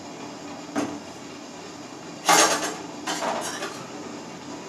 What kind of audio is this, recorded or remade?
recorded